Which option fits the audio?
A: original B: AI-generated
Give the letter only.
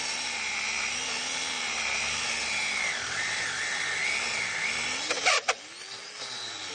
A